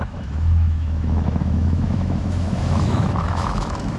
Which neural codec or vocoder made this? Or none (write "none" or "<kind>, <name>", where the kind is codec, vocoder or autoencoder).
autoencoder, DAC-VAE